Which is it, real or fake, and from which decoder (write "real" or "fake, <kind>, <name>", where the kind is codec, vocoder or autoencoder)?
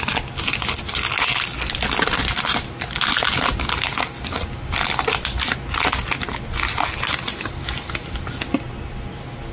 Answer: real